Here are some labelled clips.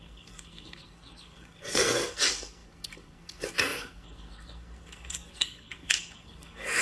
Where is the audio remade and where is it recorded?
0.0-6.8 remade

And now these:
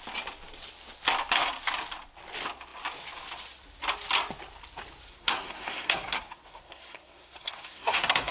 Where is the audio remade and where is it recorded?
0.0-5.1 recorded; 5.1-8.3 remade

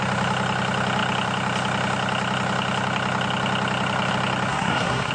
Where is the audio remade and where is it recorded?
0.0-4.5 recorded; 4.5-5.1 remade

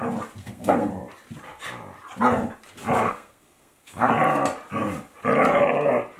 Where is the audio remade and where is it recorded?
0.0-0.4 recorded; 0.4-0.9 remade; 0.9-3.1 recorded; 3.1-4.1 remade; 4.1-6.2 recorded

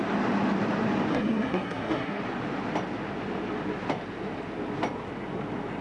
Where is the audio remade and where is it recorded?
0.0-1.1 recorded; 1.1-2.2 remade; 2.2-5.8 recorded